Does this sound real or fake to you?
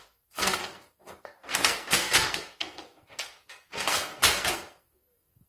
fake